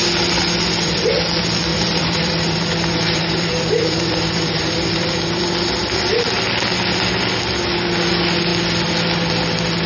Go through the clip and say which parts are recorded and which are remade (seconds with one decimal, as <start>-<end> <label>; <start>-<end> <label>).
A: 0.0-1.7 recorded; 1.7-5.4 remade; 5.4-9.9 recorded